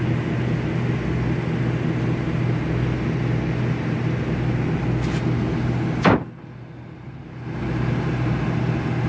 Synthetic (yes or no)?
no